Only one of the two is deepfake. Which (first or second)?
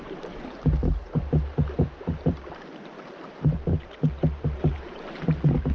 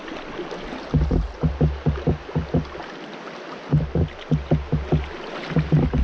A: first